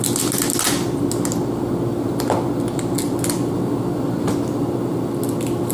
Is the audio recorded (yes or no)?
yes